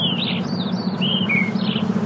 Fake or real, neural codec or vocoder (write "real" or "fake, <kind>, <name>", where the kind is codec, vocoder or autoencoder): real